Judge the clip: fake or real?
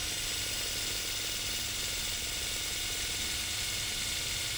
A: real